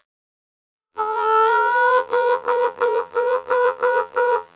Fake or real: fake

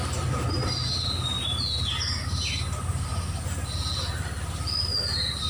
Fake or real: real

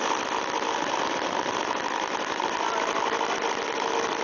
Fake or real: real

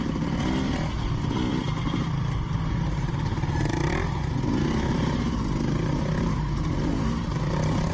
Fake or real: real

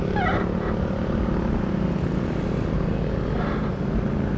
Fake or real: real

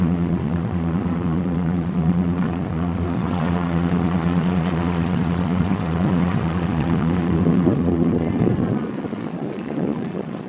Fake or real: fake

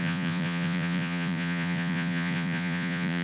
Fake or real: fake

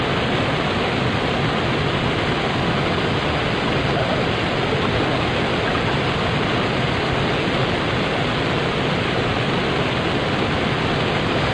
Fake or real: real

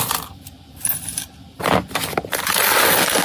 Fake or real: real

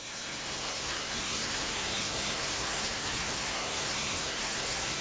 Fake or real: fake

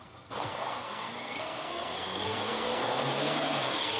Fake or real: fake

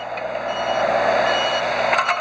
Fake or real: real